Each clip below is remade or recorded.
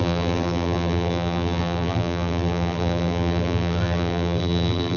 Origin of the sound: remade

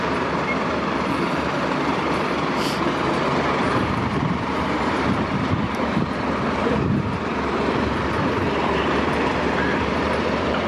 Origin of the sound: remade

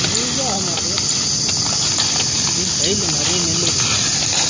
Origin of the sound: recorded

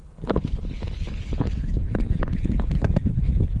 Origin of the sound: remade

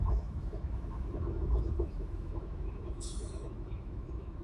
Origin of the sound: remade